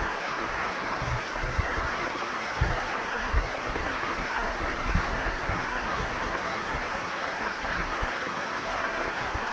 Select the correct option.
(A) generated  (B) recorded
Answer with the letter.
A